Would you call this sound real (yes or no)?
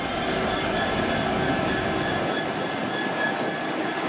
yes